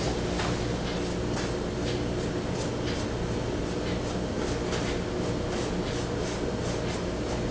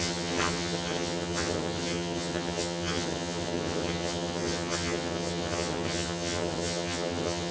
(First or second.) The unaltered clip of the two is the first